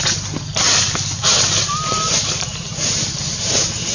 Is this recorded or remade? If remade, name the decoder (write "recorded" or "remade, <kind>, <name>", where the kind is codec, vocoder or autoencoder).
recorded